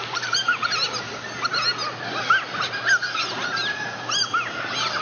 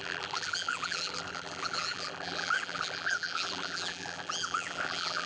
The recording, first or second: first